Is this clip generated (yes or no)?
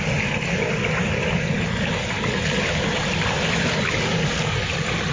no